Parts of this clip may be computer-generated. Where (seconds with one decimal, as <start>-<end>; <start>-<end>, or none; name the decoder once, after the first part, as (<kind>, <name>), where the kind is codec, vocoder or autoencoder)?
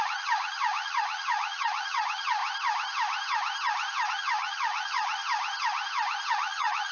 0.0-2.4 (vocoder, Vocos); 4.1-5.2; 6.3-6.9